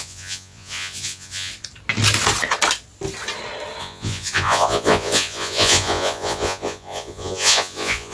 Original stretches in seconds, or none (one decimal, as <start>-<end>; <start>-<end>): 1.5-3.8